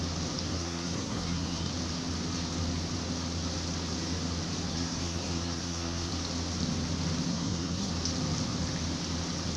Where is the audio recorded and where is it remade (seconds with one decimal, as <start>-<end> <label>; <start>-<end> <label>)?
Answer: 0.0-0.5 recorded; 0.5-1.7 remade; 1.7-4.7 recorded; 4.7-6.1 remade; 6.1-7.3 recorded; 7.3-7.9 remade; 7.9-9.6 recorded